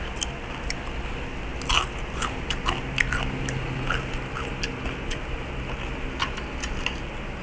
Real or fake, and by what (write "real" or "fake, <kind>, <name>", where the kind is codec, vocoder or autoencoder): real